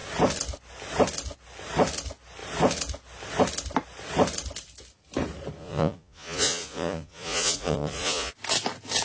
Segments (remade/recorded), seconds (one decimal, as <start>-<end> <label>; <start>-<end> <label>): 0.0-5.6 recorded; 5.6-8.3 remade; 8.3-9.0 recorded